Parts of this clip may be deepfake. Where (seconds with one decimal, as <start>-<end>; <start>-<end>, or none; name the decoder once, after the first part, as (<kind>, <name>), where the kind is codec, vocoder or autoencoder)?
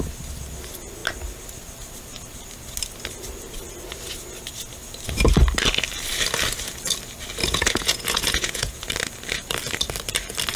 7.4-8.8 (vocoder, Vocos)